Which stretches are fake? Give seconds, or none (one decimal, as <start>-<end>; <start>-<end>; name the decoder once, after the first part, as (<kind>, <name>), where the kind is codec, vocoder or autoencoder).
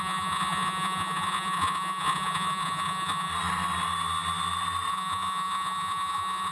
0.0-3.3 (vocoder, Vocos); 4.9-6.5